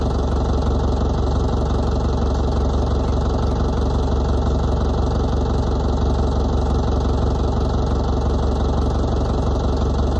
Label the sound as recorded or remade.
recorded